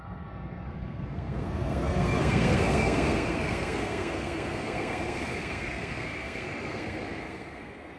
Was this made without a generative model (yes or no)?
no